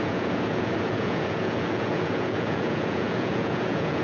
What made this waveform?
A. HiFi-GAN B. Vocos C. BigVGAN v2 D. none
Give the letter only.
B